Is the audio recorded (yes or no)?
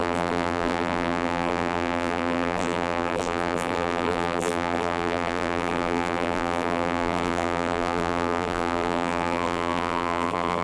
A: no